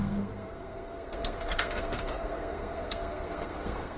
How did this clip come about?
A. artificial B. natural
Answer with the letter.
A